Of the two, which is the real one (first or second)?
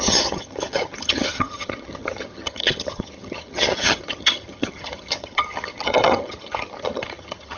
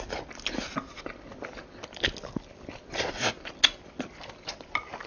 second